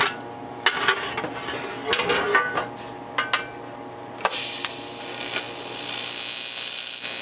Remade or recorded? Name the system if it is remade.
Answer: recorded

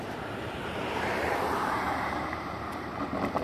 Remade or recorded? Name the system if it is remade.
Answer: remade, vocoder, BigVGAN v2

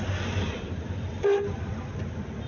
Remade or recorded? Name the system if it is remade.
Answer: recorded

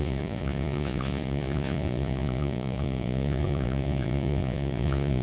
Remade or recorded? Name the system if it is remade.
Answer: remade, vocoder, Vocos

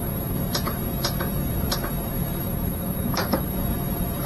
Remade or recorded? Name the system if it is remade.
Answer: remade, vocoder, Vocos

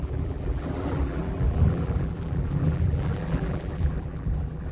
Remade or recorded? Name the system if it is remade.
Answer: remade, vocoder, BigVGAN v2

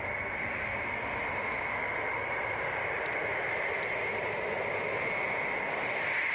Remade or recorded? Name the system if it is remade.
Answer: recorded